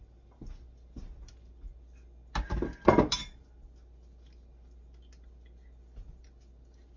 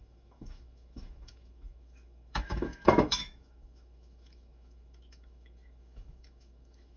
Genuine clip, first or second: first